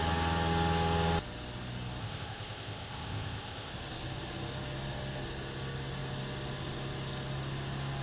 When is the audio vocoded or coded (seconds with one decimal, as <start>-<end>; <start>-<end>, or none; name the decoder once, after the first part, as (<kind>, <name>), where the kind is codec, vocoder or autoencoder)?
2.0-3.7 (codec, ZipCodec)